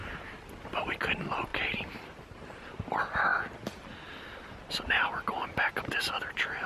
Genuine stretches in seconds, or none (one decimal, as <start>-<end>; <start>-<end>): 0.0-1.5; 2.7-6.7